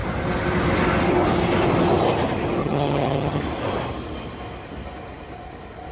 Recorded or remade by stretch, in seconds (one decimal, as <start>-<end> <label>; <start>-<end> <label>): 0.0-2.6 recorded; 2.6-3.4 remade; 3.4-5.9 recorded